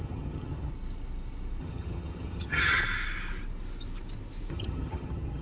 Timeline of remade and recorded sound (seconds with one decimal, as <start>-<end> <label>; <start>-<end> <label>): 0.0-0.7 remade; 0.7-1.6 recorded; 1.6-2.8 remade; 2.8-4.5 recorded; 4.5-5.4 remade